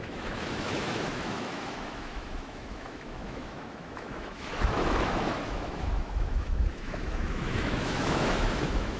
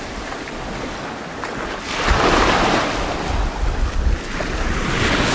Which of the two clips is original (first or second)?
second